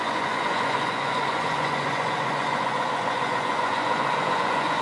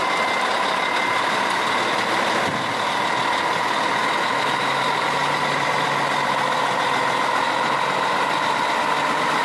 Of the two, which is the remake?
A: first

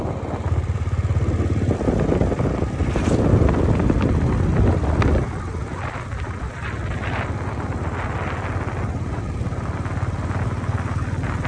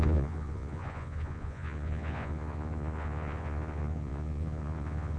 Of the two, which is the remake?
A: second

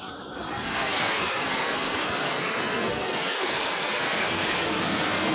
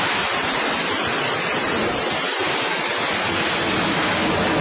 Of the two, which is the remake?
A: first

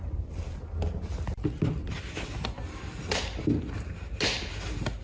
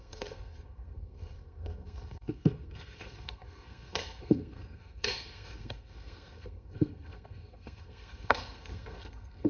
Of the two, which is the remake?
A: second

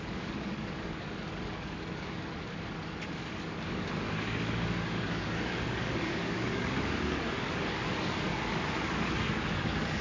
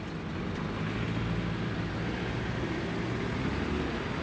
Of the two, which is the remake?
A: first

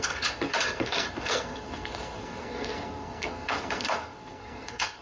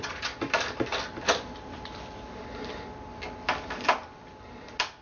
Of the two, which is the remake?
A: first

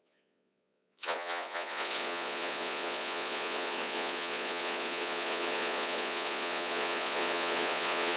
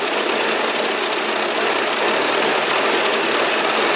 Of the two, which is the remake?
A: first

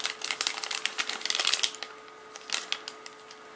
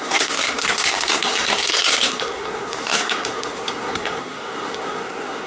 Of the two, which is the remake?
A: second